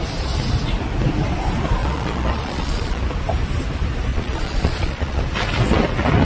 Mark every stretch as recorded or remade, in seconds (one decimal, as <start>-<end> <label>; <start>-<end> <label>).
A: 0.0-1.8 recorded; 1.8-3.0 remade; 3.0-4.1 recorded; 4.1-5.2 remade; 5.2-6.2 recorded